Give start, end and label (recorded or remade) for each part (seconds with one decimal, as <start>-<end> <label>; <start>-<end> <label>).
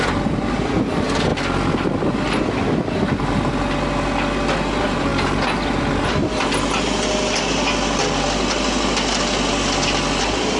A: 0.0-10.6 recorded